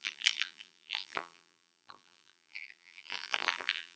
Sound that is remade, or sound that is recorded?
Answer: remade